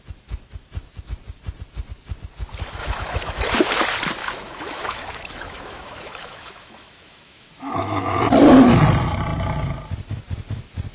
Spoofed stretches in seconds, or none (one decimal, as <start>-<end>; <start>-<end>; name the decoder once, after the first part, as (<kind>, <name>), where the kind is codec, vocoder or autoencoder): 2.8-3.6 (autoencoder, DAC-VAE); 4.2-8.3